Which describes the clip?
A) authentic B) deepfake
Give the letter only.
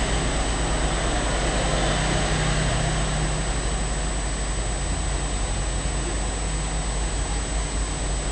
A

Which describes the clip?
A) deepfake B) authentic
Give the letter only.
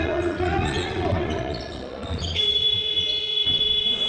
A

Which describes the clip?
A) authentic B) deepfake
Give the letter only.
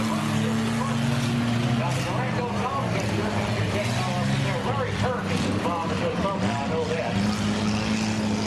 A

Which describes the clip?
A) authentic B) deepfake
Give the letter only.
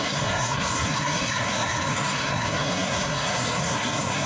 B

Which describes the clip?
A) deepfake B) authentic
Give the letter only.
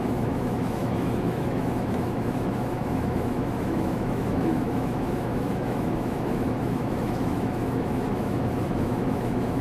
A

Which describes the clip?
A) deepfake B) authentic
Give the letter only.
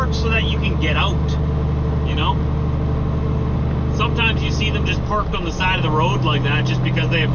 B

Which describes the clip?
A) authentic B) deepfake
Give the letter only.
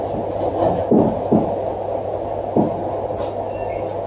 A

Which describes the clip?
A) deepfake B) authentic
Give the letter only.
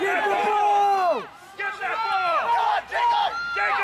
B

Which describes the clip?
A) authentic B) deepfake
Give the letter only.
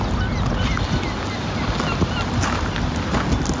A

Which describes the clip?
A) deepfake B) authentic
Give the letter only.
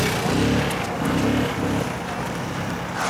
B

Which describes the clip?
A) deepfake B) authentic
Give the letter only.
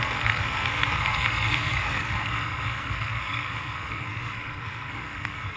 A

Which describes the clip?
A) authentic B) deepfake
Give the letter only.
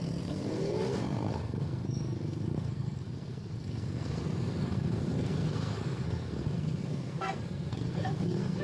B